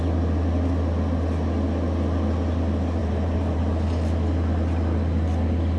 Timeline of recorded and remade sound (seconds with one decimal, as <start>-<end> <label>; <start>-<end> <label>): 0.0-3.0 recorded; 3.0-3.6 remade; 3.6-5.8 recorded